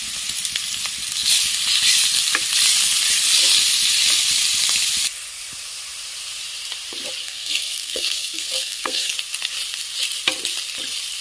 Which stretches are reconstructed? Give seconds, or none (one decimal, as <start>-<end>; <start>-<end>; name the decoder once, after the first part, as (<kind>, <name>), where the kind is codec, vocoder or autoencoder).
7.2-9.1 (codec, SNAC)